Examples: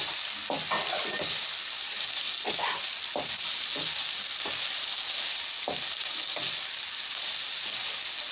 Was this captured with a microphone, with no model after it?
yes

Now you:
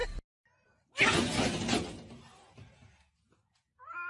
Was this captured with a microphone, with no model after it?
yes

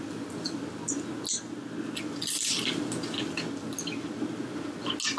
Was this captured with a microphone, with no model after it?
yes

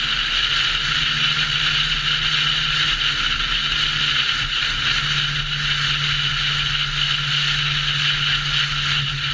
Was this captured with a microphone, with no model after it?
yes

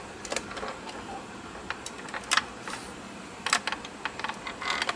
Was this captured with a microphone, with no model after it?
yes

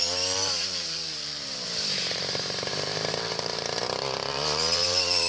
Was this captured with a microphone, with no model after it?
no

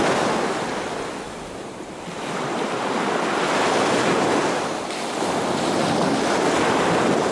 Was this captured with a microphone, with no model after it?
yes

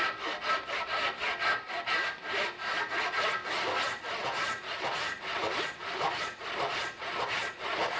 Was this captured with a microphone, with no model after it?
yes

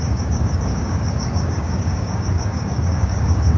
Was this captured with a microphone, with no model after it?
no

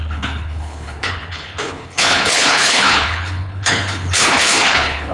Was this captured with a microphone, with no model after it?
no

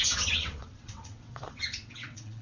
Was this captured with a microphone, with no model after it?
no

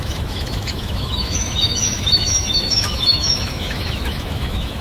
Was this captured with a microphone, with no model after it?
no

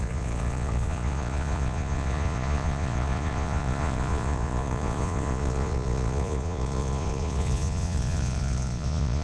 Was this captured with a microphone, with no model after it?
no